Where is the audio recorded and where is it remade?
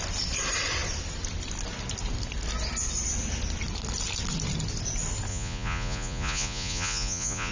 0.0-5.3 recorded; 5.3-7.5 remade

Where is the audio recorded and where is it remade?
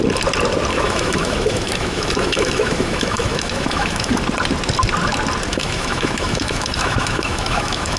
0.0-0.7 recorded; 0.7-4.1 remade; 4.1-5.5 recorded; 5.5-8.0 remade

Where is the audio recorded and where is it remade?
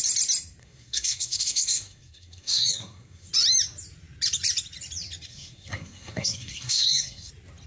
0.0-0.6 recorded; 0.6-3.3 remade; 3.3-5.3 recorded; 5.3-7.3 remade; 7.3-7.7 recorded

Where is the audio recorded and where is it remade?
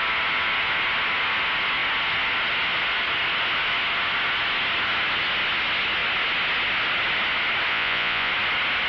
0.0-7.7 recorded; 7.7-8.3 remade; 8.3-8.9 recorded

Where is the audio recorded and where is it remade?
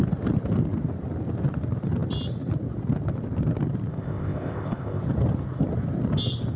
0.0-3.9 recorded; 3.9-5.0 remade; 5.0-6.6 recorded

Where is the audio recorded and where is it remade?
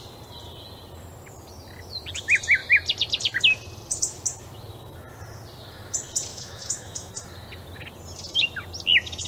0.0-6.3 recorded; 6.3-7.1 remade; 7.1-9.3 recorded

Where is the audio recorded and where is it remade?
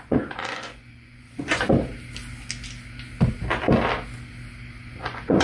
0.0-1.7 remade; 1.7-4.9 recorded; 4.9-5.4 remade